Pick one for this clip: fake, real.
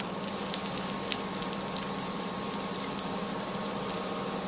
real